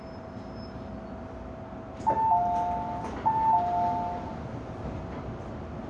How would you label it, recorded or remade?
recorded